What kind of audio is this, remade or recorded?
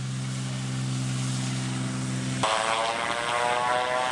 recorded